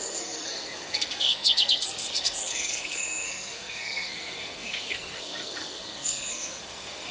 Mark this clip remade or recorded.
remade